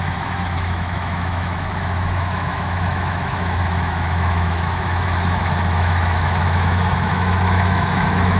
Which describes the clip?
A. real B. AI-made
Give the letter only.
B